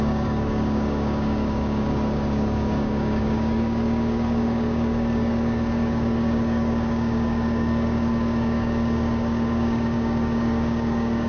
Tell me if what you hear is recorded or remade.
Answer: remade